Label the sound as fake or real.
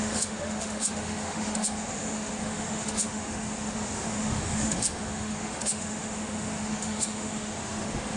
fake